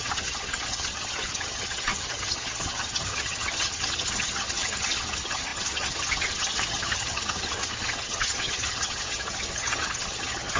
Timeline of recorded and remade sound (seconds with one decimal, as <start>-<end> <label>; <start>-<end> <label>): 0.0-10.6 remade